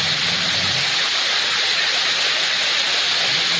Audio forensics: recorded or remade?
recorded